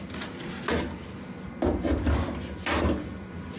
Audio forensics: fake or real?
real